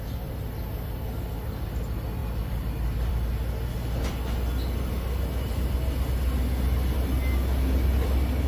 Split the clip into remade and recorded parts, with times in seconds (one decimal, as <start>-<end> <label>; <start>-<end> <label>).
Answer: 0.0-2.2 recorded; 2.2-3.3 remade; 3.3-8.5 recorded